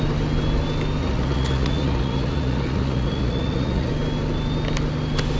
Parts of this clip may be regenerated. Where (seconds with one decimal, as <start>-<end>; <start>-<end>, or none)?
1.0-3.9